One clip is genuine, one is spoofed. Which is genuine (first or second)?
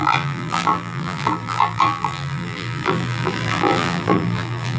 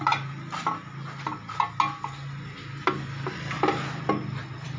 second